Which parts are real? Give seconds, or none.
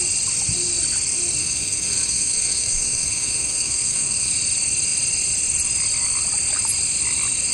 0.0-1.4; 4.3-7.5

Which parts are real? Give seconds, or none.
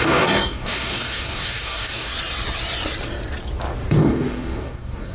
2.1-3.9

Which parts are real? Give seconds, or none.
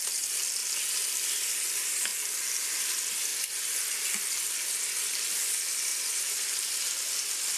0.0-5.9; 6.7-7.6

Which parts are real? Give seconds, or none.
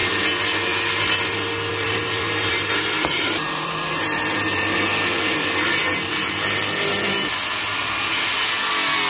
0.0-1.7; 5.1-9.1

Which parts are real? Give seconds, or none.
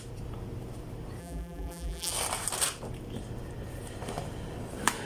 0.0-1.2; 2.1-5.1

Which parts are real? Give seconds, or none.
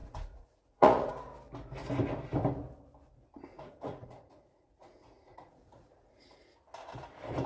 1.1-3.5; 6.5-7.5